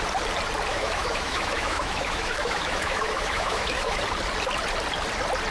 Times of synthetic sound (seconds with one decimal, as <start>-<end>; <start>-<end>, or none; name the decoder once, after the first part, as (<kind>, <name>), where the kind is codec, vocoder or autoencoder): 0.7-4.0 (autoencoder, DAC-VAE)